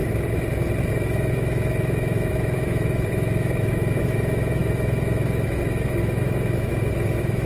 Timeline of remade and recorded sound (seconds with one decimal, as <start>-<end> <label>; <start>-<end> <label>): 0.0-0.9 recorded; 0.9-7.5 remade